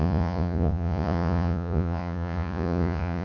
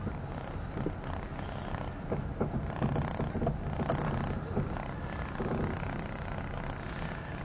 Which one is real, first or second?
second